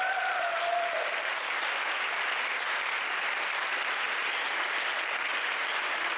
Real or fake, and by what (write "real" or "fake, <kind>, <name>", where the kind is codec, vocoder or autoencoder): real